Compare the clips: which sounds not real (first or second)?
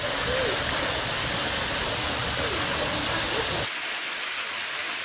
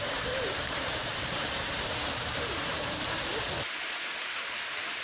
second